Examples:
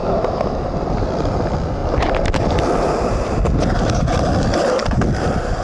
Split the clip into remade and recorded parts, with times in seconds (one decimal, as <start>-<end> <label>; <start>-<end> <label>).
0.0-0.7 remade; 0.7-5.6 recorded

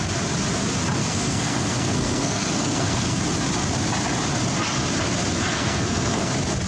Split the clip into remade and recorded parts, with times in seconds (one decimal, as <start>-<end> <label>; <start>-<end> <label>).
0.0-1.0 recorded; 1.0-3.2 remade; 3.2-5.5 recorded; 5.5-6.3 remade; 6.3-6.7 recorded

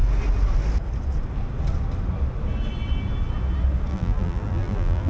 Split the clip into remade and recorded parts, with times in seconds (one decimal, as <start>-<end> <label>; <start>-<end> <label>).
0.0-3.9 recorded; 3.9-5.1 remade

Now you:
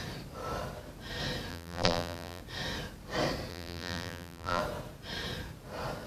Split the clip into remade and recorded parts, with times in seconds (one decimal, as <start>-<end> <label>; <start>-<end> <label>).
0.0-1.5 recorded; 1.5-2.4 remade; 2.4-3.5 recorded; 3.5-4.6 remade; 4.6-6.1 recorded

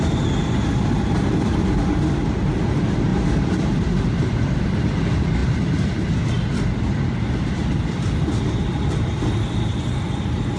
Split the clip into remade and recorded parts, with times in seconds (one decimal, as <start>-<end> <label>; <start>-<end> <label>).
0.0-10.6 recorded

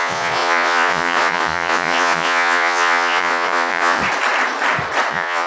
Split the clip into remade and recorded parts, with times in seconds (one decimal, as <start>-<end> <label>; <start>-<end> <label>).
0.0-4.0 remade; 4.0-5.1 recorded; 5.1-5.5 remade